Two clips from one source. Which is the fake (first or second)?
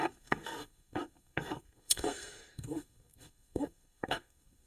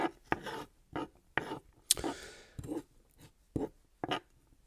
first